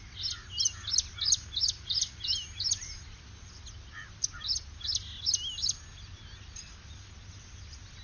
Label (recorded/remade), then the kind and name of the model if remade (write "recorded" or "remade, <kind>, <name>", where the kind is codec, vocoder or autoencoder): recorded